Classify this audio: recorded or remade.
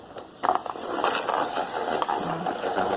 recorded